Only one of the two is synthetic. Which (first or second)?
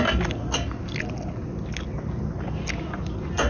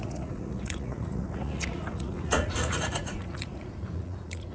second